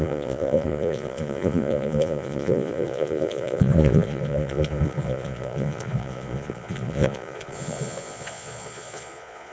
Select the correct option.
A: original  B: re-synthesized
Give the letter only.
B